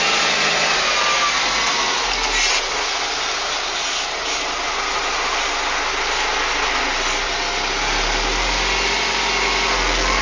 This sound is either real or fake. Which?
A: real